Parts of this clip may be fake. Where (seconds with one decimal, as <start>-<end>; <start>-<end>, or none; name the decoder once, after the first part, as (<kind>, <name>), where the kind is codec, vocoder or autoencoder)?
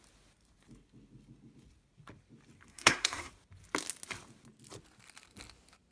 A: 2.7-3.3 (codec, SNAC)